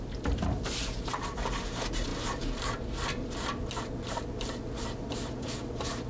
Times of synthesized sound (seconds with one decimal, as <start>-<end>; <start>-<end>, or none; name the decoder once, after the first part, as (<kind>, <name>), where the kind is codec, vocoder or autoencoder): none